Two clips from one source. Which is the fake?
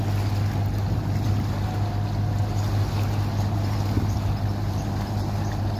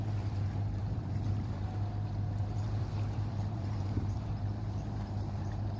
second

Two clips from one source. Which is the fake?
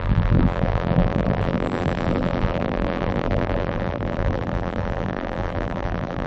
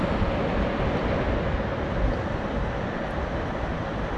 first